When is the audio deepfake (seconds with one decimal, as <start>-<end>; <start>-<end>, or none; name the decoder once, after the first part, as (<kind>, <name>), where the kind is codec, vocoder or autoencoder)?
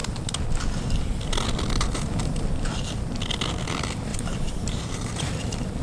4.1-5.1 (vocoder, BigVGAN v2)